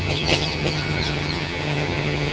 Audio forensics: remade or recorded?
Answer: remade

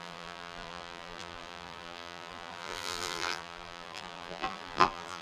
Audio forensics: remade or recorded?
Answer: remade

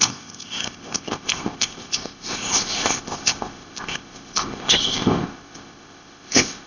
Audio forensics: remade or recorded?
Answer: remade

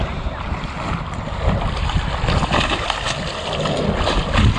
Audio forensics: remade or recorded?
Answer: recorded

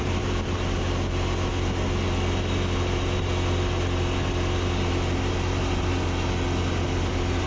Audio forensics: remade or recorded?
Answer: recorded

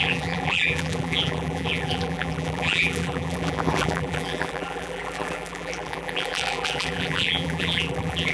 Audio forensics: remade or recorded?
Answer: remade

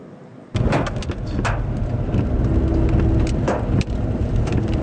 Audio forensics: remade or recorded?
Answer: recorded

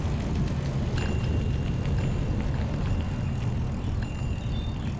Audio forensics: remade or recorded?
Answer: recorded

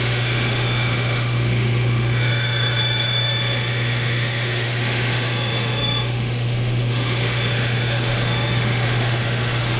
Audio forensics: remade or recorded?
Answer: remade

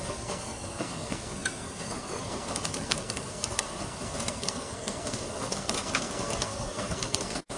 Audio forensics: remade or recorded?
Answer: remade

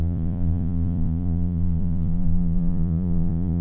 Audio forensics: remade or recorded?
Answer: remade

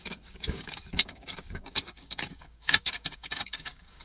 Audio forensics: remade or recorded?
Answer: remade